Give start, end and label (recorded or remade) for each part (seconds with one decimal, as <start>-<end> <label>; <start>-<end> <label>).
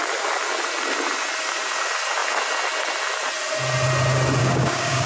0.0-4.4 recorded; 4.4-5.1 remade